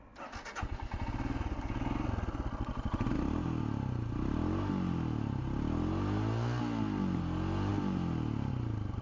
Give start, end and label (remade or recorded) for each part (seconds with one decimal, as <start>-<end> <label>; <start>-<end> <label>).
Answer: 0.0-9.0 recorded